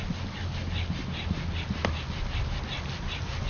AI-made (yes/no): no